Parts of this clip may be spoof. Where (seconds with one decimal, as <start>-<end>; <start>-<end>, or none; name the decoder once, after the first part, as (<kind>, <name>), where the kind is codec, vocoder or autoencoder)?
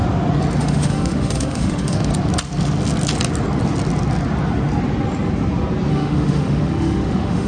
0.6-2.1 (autoencoder, DAC-VAE); 5.9-7.5